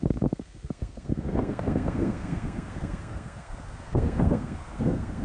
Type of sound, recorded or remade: remade